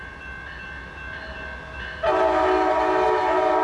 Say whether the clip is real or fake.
real